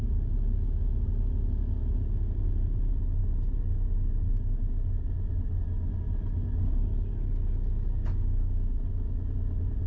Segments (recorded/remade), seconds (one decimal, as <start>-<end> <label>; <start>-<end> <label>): 0.0-9.9 recorded